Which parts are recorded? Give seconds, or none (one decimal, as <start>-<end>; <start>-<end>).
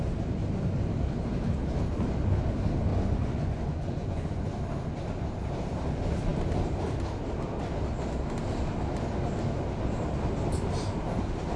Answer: 0.0-2.9; 4.5-11.6